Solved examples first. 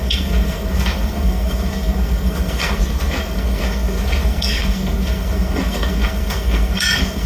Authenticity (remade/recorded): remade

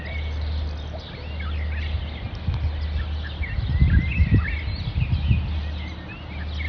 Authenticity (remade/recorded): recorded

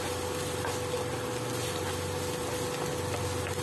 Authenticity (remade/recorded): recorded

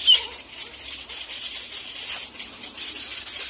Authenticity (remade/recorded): recorded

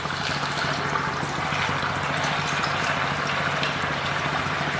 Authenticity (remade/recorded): recorded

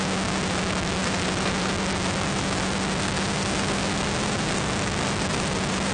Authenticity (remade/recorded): recorded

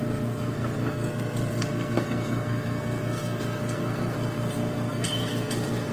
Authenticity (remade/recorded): remade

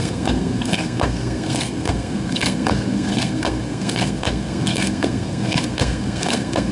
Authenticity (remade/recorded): remade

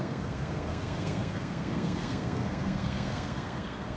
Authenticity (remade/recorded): remade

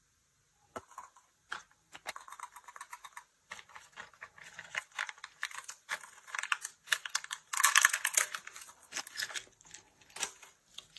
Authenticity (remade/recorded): recorded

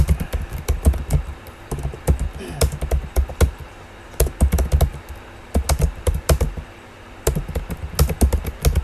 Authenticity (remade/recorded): recorded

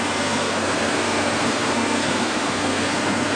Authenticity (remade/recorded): remade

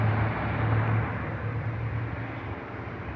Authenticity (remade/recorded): recorded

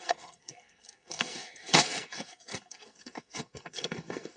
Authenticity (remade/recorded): remade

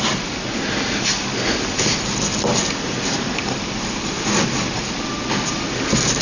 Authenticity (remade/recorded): recorded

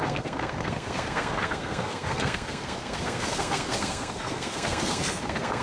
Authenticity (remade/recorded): remade